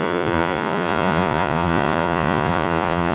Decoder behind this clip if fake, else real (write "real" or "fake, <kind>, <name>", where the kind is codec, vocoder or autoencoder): fake, vocoder, Vocos